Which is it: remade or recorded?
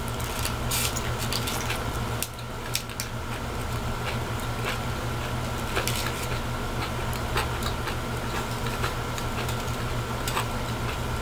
recorded